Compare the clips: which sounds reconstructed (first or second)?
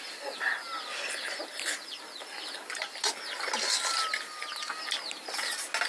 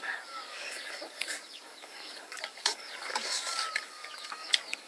second